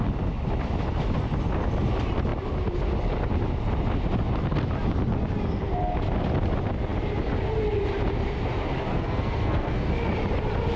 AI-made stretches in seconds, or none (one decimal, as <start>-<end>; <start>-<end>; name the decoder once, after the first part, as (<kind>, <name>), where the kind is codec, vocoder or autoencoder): 8.9-9.9 (codec, SNAC)